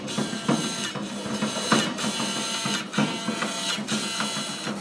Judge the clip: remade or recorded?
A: recorded